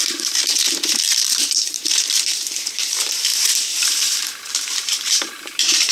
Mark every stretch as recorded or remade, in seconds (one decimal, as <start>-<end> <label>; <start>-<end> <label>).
0.0-5.9 remade